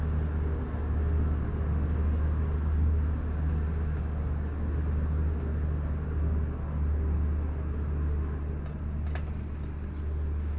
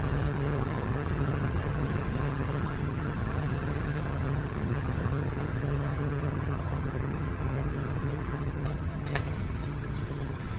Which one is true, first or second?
first